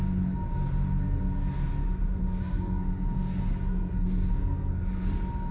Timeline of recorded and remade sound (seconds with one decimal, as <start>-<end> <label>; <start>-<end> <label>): 0.0-1.8 recorded; 1.8-5.1 remade; 5.1-5.5 recorded